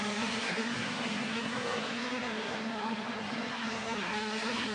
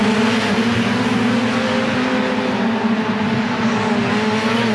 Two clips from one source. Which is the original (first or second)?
second